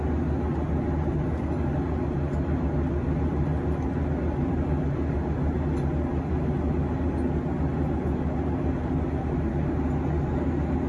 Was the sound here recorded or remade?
recorded